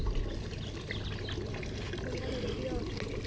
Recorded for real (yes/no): yes